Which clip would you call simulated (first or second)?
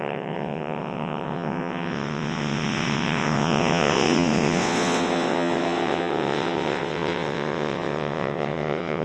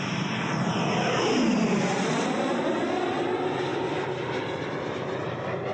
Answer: first